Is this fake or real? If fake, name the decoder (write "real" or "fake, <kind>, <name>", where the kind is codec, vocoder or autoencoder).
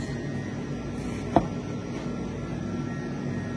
real